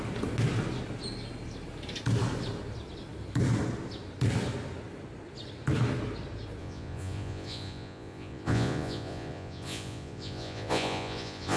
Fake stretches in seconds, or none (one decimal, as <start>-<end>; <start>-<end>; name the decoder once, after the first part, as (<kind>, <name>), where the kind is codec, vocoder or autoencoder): 6.6-11.6 (vocoder, Vocos)